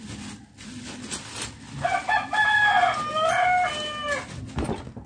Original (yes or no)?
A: yes